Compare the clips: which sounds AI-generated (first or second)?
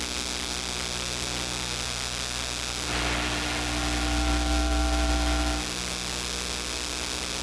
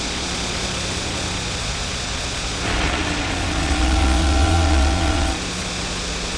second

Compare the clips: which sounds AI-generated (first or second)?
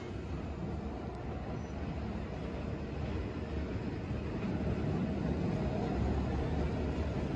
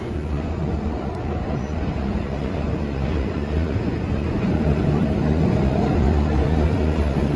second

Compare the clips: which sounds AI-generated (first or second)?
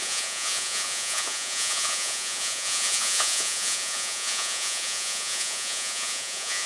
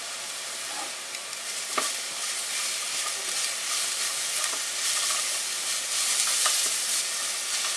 first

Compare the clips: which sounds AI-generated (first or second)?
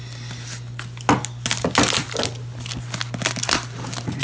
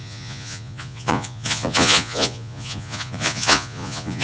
second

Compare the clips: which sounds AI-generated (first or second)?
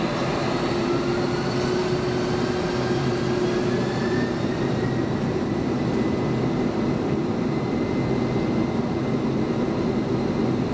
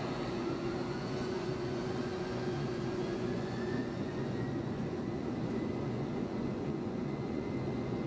second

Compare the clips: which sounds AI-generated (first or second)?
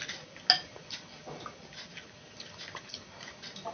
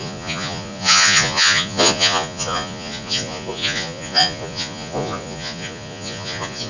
second